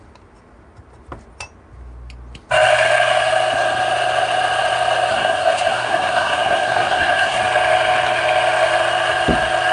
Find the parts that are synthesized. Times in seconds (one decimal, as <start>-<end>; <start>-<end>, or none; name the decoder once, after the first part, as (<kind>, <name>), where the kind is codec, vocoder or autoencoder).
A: 5.1-7.4 (codec, SNAC)